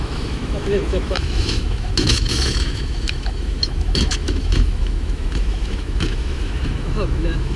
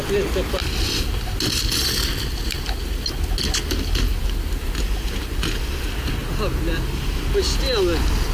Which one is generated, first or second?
first